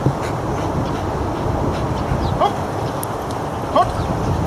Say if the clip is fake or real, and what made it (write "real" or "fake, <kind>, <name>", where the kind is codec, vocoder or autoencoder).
real